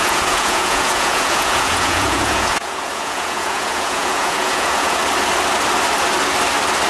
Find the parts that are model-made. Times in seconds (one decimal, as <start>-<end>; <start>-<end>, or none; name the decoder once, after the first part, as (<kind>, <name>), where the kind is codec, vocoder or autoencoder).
0.0-5.0 (vocoder, Vocos)